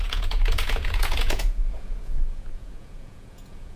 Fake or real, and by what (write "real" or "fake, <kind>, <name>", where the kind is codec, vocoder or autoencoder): fake, vocoder, Vocos